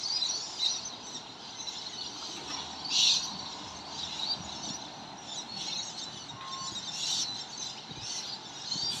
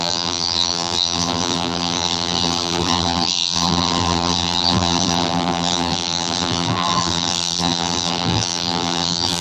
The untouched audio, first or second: first